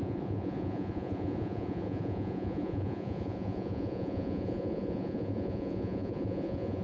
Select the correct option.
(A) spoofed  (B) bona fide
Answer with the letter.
A